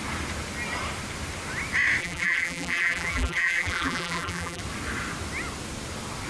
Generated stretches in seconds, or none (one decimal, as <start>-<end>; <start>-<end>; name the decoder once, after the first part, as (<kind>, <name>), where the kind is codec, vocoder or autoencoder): 2.0-4.6 (vocoder, BigVGAN v2)